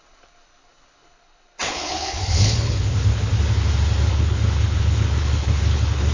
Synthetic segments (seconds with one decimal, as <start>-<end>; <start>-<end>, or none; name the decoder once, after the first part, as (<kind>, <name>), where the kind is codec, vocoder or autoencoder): 0.0-3.3 (codec, HILCodec); 4.1-6.1